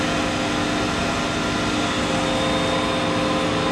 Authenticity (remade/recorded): recorded